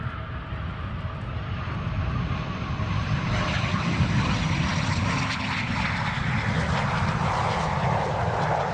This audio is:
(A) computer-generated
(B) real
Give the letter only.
B